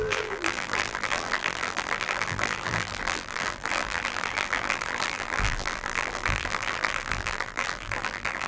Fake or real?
fake